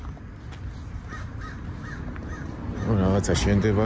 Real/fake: real